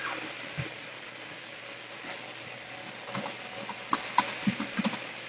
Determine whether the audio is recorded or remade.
recorded